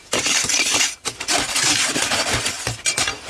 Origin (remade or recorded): recorded